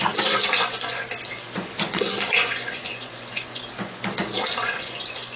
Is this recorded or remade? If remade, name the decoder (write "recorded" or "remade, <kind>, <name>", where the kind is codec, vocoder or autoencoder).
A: remade, vocoder, Vocos